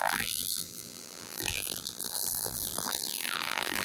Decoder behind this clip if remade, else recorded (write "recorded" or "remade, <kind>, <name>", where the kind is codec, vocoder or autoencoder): remade, vocoder, BigVGAN v2